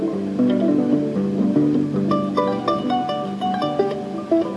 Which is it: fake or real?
real